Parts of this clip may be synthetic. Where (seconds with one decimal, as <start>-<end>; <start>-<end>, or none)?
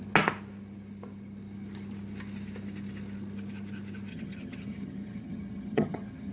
4.1-6.3